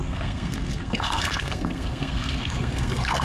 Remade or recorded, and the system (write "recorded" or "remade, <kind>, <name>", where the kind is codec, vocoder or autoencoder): remade, codec, SNAC